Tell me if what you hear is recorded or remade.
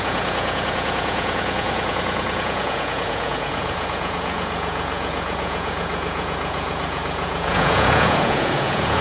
remade